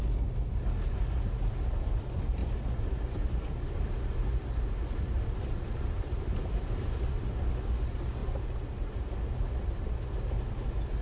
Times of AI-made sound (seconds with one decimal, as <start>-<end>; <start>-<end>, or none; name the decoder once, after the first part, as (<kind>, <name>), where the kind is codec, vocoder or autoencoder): 2.4-7.5 (vocoder, BigVGAN v2)